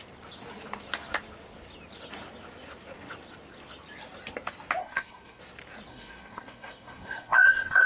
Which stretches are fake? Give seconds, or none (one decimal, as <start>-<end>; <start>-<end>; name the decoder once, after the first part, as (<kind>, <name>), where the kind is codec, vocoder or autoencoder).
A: 4.8-5.4 (codec, SNAC); 5.9-7.9